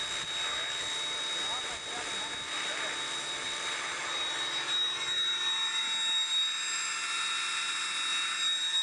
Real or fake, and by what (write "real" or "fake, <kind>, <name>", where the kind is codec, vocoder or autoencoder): real